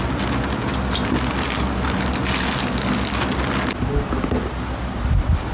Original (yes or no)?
yes